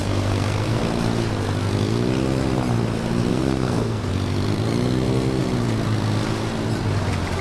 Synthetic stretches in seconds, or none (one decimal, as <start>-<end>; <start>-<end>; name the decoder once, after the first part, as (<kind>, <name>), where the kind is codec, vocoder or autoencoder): 0.0-0.8 (codec, SNAC); 3.3-4.1